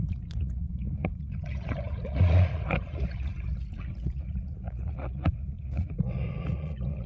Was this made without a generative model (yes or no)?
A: no